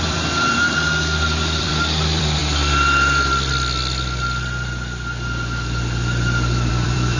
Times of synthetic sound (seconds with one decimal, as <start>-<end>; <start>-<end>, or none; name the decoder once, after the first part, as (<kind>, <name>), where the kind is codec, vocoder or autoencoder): 0.0-2.4 (vocoder, BigVGAN v2); 6.7-7.2